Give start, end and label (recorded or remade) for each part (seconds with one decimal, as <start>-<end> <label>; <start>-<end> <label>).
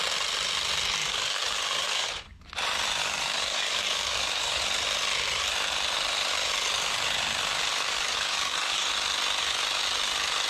0.0-1.0 recorded; 1.0-2.4 remade; 2.4-3.0 recorded; 3.0-4.6 remade; 4.6-7.7 recorded; 7.7-8.9 remade; 8.9-10.5 recorded